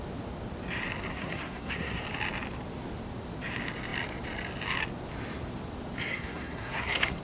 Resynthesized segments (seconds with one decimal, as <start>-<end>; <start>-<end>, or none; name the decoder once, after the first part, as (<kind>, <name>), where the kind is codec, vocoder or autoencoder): 1.1-2.0 (codec, SNAC); 6.1-7.2